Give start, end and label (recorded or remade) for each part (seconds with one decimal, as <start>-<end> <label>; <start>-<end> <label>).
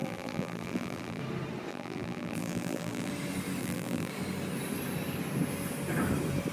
0.0-1.2 remade; 1.2-1.7 recorded; 1.7-3.1 remade; 3.1-3.6 recorded; 3.6-4.1 remade; 4.1-6.5 recorded